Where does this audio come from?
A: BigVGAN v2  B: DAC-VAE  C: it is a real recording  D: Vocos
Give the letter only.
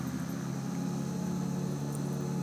C